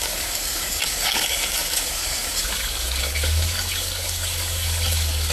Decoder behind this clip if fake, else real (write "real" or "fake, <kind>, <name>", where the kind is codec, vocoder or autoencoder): fake, codec, DAC